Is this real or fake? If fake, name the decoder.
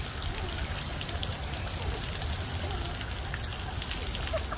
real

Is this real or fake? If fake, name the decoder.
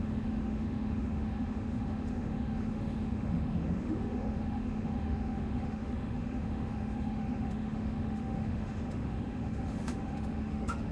fake, autoencoder, DAC-VAE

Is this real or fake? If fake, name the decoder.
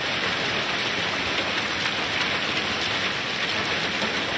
real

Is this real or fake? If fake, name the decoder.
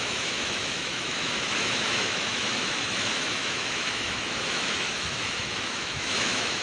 fake, autoencoder, DAC-VAE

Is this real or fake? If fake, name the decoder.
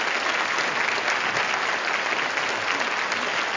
real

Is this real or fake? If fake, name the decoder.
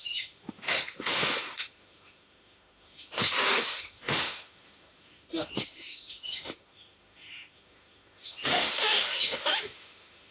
fake, autoencoder, DAC-VAE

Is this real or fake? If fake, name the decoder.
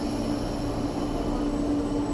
real